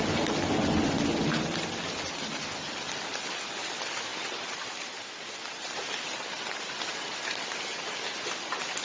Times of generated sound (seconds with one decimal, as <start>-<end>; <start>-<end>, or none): none